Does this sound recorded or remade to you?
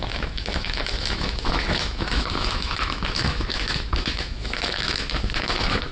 remade